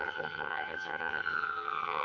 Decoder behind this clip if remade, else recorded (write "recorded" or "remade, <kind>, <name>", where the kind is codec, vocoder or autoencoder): remade, vocoder, HiFi-GAN